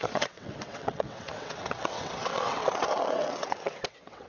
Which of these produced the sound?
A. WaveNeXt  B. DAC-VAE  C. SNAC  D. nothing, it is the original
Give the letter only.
A